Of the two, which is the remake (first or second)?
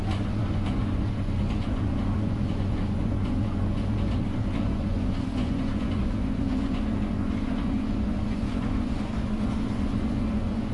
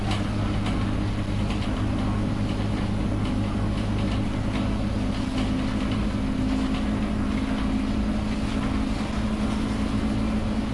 first